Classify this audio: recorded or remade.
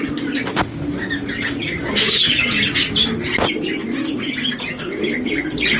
recorded